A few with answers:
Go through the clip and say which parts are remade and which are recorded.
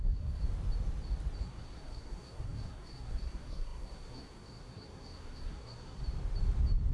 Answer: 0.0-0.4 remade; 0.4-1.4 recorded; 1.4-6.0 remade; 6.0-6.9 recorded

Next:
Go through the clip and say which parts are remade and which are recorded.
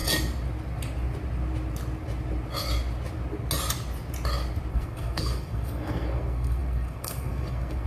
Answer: 0.0-4.7 recorded; 4.7-7.9 remade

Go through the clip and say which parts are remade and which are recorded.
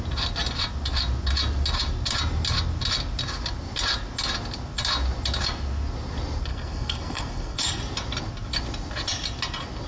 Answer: 0.0-6.5 recorded; 6.5-7.8 remade; 7.8-9.9 recorded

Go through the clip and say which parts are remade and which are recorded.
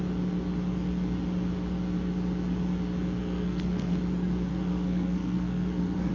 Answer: 0.0-3.2 recorded; 3.2-3.9 remade; 3.9-4.5 recorded; 4.5-6.1 remade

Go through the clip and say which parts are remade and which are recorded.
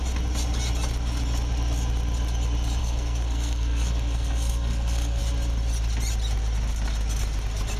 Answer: 0.0-2.8 recorded; 2.8-5.2 remade; 5.2-7.8 recorded